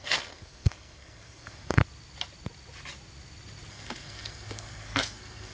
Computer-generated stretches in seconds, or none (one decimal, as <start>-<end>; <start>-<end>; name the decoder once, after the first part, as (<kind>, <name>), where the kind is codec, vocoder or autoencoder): 0.0-1.8 (codec, SNAC); 3.7-5.5